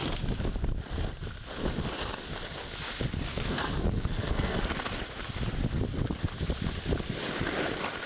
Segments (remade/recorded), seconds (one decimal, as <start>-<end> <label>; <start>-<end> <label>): 0.0-3.3 recorded; 3.3-4.6 remade; 4.6-8.1 recorded